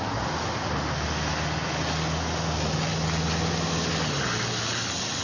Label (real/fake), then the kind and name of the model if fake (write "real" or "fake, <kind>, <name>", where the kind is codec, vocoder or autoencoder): real